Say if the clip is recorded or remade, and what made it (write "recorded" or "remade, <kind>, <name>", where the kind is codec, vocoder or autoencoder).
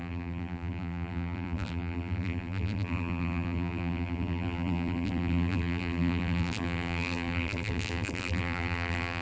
remade, vocoder, BigVGAN v2